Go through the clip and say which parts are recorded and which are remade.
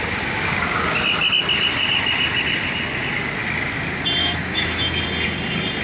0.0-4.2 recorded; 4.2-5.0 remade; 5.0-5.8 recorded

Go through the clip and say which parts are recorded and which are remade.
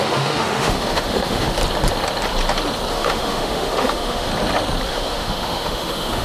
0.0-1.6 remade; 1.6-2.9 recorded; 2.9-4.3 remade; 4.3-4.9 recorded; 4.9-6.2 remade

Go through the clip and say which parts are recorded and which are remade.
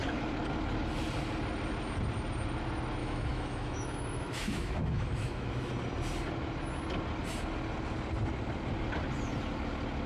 0.0-3.0 recorded; 3.0-5.7 remade; 5.7-10.1 recorded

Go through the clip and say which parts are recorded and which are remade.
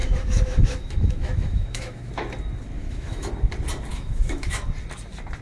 0.0-2.1 remade; 2.1-2.8 recorded; 2.8-3.3 remade; 3.3-3.9 recorded; 3.9-4.6 remade; 4.6-5.4 recorded